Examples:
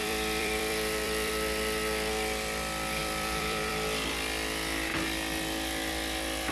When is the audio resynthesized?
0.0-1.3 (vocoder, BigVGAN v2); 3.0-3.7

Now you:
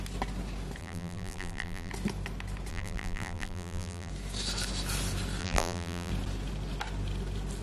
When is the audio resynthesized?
0.8-1.9 (vocoder, BigVGAN v2); 2.7-4.1; 5.4-6.1

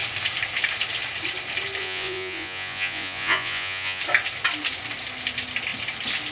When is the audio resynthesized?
1.8-4.0 (vocoder, Vocos)

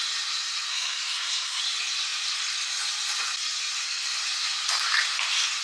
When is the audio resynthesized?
0.7-1.6 (codec, SNAC)

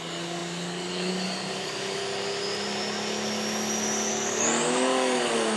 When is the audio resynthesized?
0.0-2.0 (codec, DAC); 4.1-5.6

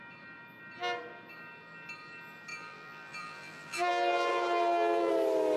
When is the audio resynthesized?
2.5-3.9 (vocoder, BigVGAN v2); 4.3-5.1